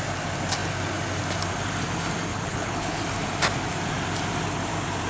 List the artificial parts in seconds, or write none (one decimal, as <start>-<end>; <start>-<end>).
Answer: 2.3-3.0